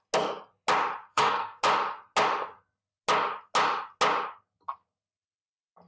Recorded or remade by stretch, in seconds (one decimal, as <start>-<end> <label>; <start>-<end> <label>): 0.0-1.1 recorded; 1.1-1.6 remade; 1.6-5.9 recorded

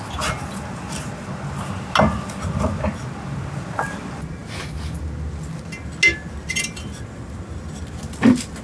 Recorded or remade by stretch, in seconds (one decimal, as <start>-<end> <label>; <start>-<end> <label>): 0.0-8.6 recorded